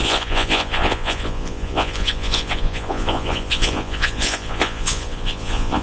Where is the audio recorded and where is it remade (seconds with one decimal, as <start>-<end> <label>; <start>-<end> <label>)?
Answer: 0.0-5.8 remade